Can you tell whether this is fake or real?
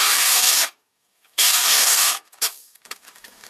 fake